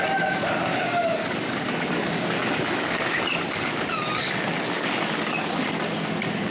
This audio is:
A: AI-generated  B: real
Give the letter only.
A